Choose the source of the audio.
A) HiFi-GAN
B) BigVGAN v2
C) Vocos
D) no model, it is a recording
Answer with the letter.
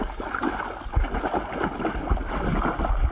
D